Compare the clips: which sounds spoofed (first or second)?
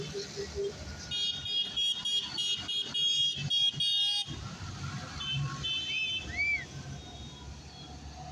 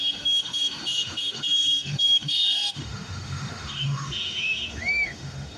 second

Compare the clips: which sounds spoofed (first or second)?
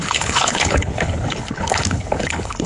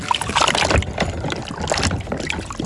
first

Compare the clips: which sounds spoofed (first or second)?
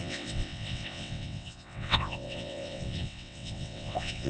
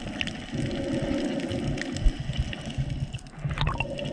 first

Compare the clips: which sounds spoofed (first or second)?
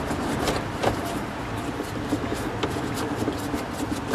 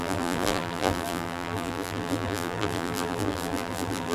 second